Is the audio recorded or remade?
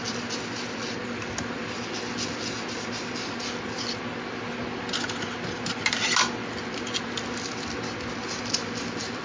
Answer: recorded